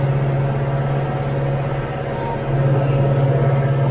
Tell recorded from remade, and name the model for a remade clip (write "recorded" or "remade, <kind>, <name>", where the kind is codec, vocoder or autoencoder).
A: recorded